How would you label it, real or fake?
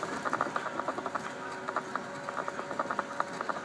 real